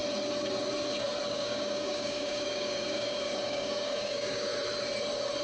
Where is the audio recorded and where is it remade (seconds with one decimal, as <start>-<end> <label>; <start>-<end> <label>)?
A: 0.0-1.3 recorded; 1.3-4.5 remade; 4.5-5.4 recorded